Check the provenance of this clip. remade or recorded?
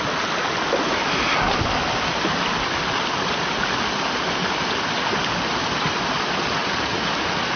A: recorded